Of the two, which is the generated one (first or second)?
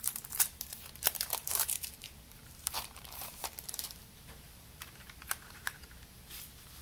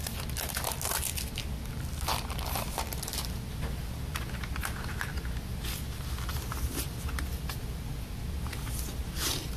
first